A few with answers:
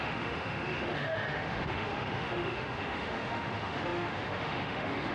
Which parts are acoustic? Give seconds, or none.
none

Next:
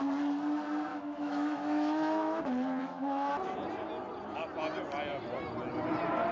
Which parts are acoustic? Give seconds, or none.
0.0-0.9; 2.4-2.8; 3.3-6.3

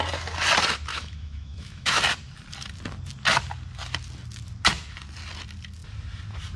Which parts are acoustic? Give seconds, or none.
0.0-0.9; 2.0-6.6

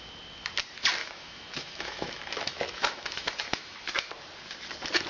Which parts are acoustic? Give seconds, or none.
0.0-1.0; 4.1-5.1

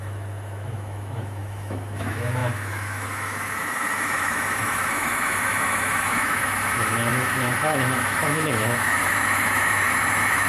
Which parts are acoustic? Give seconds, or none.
none

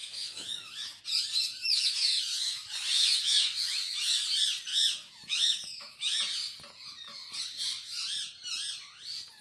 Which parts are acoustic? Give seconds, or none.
1.0-1.5; 4.1-4.7; 6.2-9.4

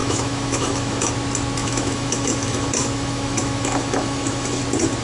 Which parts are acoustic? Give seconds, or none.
1.1-1.6; 4.6-5.0